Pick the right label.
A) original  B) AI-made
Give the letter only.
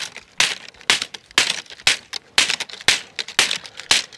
A